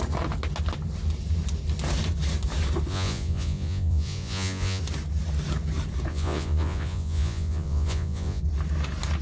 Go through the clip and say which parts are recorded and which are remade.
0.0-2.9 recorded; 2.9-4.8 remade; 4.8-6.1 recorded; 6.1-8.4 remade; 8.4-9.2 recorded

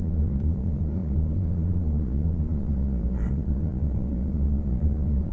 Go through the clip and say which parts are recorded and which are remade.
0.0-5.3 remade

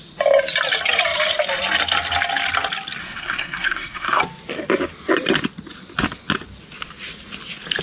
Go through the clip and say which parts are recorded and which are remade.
0.0-3.0 recorded; 3.0-4.2 remade; 4.2-7.8 recorded

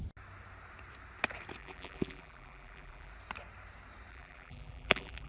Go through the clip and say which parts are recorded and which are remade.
0.0-1.6 recorded; 1.6-3.1 remade; 3.1-4.1 recorded; 4.1-5.3 remade

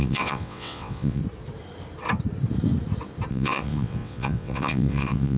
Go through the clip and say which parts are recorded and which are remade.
0.0-1.2 remade; 1.2-3.3 recorded; 3.3-5.4 remade

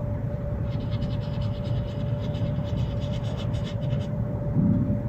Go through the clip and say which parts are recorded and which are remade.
0.0-1.0 remade; 1.0-2.2 recorded; 2.2-4.4 remade; 4.4-5.1 recorded

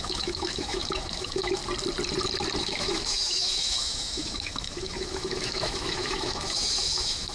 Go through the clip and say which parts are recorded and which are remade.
0.0-1.6 remade; 1.6-2.6 recorded; 2.6-7.3 remade